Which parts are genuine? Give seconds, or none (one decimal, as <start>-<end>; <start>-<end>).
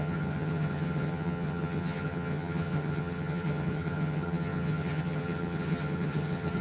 none